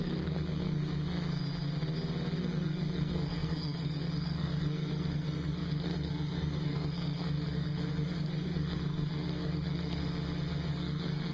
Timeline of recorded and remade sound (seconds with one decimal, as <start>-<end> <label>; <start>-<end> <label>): 0.0-1.4 remade; 1.4-2.4 recorded; 2.4-10.0 remade; 10.0-10.7 recorded; 10.7-11.3 remade